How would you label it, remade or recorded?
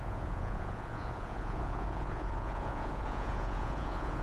remade